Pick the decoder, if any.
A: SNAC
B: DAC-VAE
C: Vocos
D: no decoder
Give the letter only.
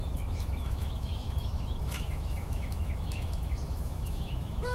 B